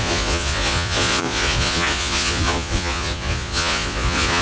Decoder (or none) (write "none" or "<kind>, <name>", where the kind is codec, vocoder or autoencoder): vocoder, Vocos